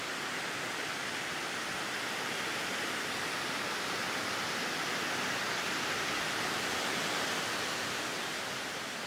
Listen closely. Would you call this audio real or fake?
real